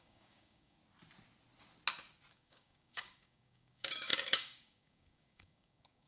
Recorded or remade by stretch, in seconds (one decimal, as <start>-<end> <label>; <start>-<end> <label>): 0.0-0.8 remade; 0.8-2.3 recorded; 2.3-6.1 remade